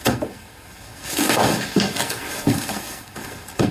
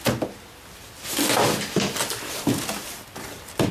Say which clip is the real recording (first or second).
second